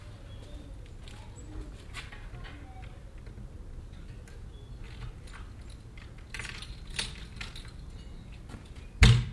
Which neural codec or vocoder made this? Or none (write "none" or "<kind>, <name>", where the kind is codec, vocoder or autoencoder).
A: none